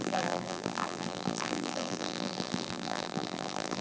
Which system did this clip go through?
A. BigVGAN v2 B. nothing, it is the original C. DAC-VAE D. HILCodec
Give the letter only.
A